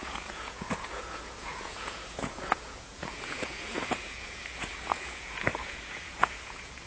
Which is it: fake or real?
fake